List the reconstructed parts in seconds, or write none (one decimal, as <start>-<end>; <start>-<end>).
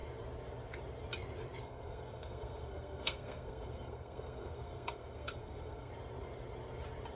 1.6-5.9